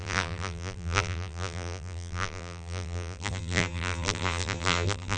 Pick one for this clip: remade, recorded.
remade